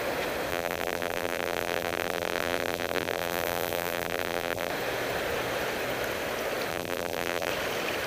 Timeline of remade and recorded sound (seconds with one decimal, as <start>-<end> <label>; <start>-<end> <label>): 0.0-0.5 recorded; 0.5-4.7 remade; 4.7-6.7 recorded; 6.7-7.5 remade; 7.5-8.1 recorded